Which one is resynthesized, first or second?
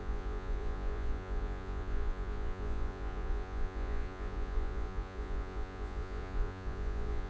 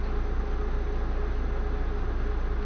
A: first